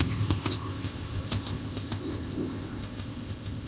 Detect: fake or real fake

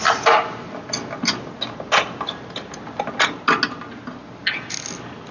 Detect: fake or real real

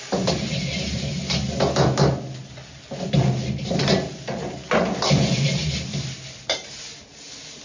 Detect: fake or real real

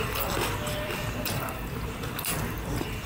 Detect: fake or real fake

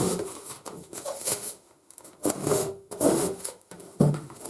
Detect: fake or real fake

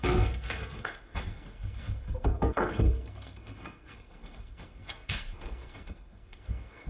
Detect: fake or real fake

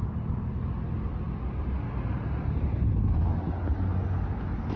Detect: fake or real real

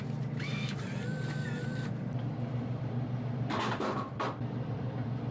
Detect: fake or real fake